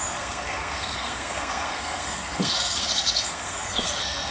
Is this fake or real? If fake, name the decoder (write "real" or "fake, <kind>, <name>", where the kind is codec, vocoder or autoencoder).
fake, codec, SNAC